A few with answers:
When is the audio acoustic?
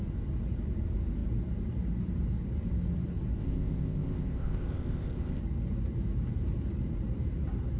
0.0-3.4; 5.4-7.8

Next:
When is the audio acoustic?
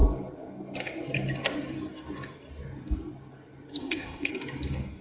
0.0-3.8; 4.3-5.0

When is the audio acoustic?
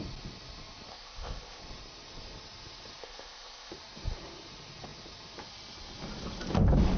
0.0-0.9; 1.6-3.0; 3.7-7.0